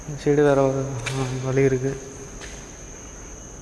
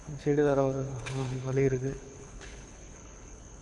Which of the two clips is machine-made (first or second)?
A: second